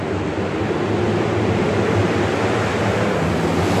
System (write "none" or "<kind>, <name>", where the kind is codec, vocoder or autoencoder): none